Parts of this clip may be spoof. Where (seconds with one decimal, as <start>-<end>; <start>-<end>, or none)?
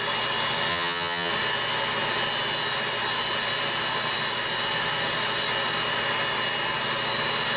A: 0.7-1.3